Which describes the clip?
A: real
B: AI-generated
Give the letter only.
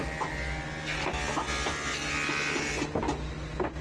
A